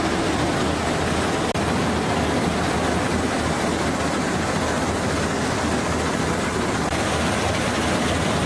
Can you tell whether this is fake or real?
real